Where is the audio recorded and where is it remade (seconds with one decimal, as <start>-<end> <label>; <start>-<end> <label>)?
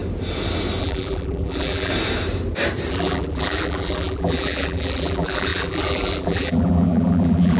0.0-0.8 recorded; 0.8-1.9 remade; 1.9-2.9 recorded; 2.9-7.6 remade